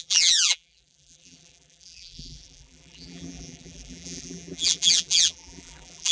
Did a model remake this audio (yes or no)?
yes